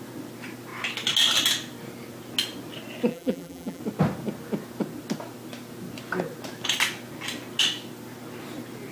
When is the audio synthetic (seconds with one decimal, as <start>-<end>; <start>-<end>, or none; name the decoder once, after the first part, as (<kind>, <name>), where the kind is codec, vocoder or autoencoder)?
3.1-3.8 (vocoder, BigVGAN v2)

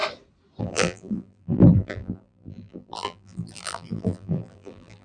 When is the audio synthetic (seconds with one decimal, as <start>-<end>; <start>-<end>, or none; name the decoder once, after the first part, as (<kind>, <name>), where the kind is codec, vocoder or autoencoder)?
0.6-5.0 (vocoder, BigVGAN v2)

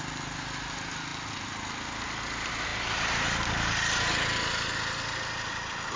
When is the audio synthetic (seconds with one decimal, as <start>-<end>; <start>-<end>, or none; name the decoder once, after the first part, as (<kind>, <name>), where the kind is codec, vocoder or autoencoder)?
none